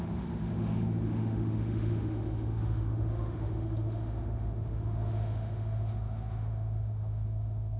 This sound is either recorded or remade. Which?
remade